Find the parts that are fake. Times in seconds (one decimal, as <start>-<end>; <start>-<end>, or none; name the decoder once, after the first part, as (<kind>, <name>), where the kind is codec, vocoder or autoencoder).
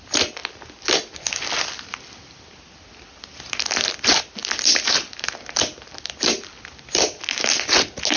none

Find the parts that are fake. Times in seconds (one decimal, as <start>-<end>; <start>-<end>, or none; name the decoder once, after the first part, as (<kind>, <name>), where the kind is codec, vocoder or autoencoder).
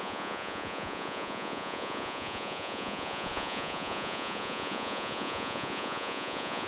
0.0-6.7 (vocoder, Vocos)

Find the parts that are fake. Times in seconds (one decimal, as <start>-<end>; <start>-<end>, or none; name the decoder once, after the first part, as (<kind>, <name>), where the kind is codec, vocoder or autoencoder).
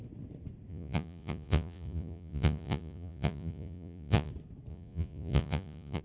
0.7-4.3 (vocoder, Vocos); 4.7-6.0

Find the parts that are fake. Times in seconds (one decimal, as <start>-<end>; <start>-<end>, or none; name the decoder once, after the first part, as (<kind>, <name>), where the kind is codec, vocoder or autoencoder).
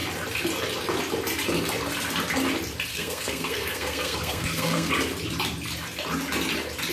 2.9-4.9 (codec, SNAC)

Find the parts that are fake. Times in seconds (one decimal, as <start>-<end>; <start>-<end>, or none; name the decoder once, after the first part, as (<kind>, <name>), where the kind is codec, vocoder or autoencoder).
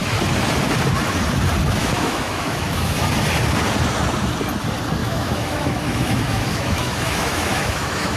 1.8-3.0 (autoencoder, DAC-VAE); 5.0-8.2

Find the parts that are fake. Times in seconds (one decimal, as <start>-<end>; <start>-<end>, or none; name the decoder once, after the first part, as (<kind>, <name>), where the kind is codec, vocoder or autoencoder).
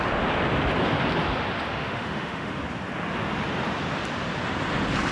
1.7-2.6 (autoencoder, DAC-VAE)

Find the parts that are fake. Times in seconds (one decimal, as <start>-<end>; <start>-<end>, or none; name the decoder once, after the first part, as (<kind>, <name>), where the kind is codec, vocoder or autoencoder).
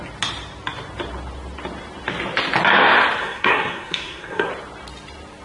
3.2-4.5 (codec, SNAC)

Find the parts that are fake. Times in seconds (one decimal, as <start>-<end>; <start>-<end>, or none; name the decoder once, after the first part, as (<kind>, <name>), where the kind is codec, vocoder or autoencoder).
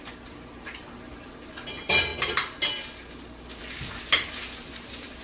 none